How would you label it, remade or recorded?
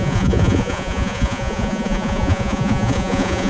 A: remade